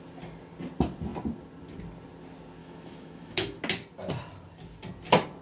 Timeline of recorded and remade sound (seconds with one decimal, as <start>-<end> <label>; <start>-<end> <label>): 0.0-2.6 recorded; 2.6-3.6 remade; 3.6-5.4 recorded